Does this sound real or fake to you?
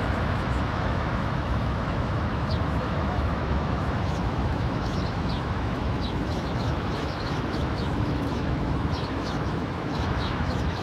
fake